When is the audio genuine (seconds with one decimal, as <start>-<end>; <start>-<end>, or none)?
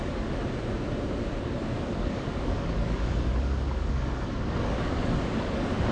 0.4-1.4